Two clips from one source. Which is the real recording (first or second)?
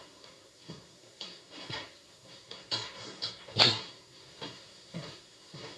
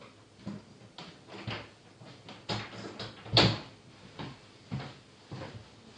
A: second